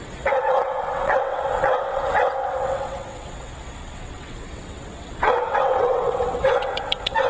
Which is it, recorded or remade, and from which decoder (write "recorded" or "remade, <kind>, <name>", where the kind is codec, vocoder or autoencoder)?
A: remade, vocoder, WaveNeXt